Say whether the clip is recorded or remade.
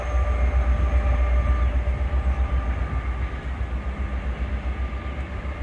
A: recorded